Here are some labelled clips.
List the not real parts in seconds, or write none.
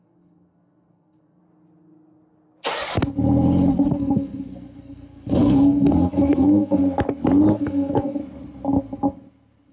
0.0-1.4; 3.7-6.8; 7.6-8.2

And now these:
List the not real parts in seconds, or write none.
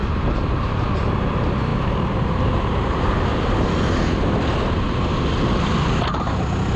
0.0-0.9; 1.7-2.9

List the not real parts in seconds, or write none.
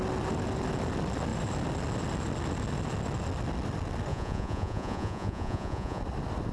4.1-6.0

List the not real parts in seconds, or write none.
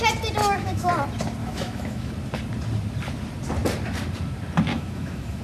0.4-0.9; 1.4-2.1; 4.7-5.4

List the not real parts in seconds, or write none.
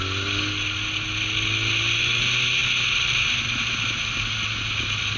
none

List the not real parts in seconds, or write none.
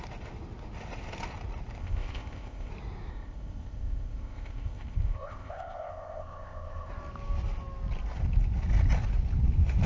1.8-2.7; 3.1-6.9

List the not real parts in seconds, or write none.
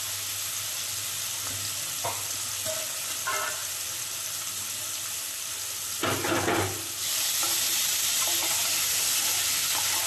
none